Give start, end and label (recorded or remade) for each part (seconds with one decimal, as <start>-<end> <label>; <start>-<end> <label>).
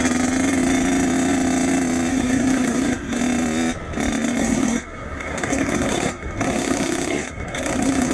0.0-2.1 recorded; 2.1-3.2 remade; 3.2-4.4 recorded; 4.4-8.1 remade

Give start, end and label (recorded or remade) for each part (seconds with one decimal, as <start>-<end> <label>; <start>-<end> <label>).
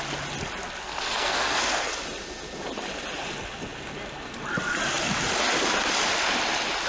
0.0-0.8 recorded; 0.8-1.9 remade; 1.9-6.9 recorded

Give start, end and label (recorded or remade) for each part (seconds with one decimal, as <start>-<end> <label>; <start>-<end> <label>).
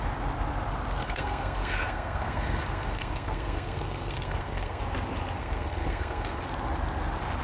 0.0-1.0 recorded; 1.0-4.8 remade; 4.8-5.4 recorded; 5.4-6.4 remade; 6.4-7.4 recorded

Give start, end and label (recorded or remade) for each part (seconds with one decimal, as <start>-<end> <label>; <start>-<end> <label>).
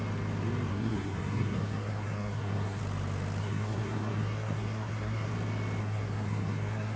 0.0-0.7 recorded; 0.7-2.8 remade; 2.8-3.4 recorded; 3.4-5.3 remade; 5.3-5.8 recorded; 5.8-7.0 remade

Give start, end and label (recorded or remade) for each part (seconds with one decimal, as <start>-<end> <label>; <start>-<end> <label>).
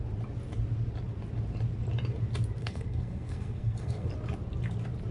0.0-2.6 recorded; 2.6-4.1 remade; 4.1-5.1 recorded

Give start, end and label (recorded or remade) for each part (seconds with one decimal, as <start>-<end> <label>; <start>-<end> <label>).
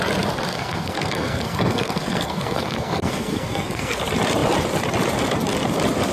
0.0-0.5 recorded; 0.5-4.0 remade; 4.0-6.1 recorded